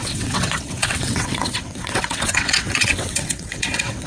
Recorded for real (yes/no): no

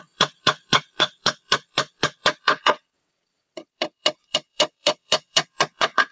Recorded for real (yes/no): no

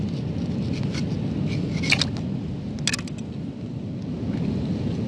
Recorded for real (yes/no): yes